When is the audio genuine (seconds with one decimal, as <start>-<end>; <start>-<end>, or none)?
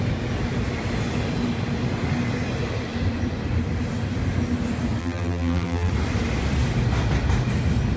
0.0-5.0; 5.9-8.0